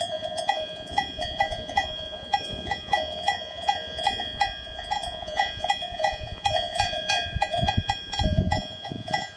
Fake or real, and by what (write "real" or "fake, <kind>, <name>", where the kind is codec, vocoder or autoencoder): fake, vocoder, Vocos